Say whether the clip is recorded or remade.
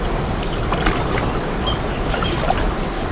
recorded